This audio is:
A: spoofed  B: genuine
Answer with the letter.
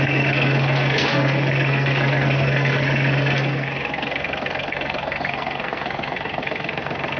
A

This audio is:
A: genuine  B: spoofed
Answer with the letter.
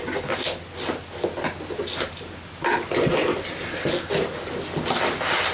A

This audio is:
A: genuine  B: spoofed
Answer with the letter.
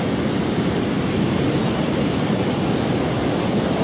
A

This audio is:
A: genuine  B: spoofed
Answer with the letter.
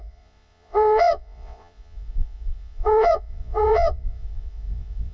B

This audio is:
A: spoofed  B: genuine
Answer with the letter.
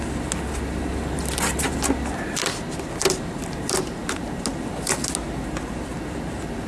B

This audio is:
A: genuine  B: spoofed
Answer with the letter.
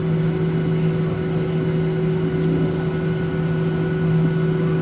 A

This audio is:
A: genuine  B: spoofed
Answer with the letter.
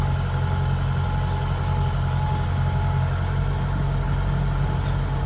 A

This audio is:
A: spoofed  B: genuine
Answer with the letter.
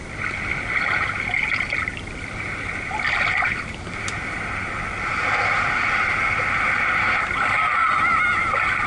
B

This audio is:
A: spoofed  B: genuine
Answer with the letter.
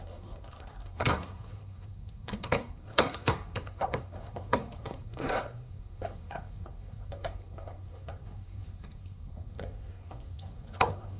A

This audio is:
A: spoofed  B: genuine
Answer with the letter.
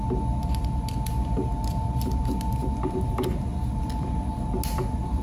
B